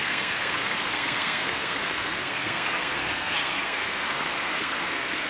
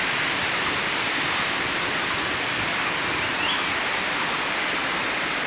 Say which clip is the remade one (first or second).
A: first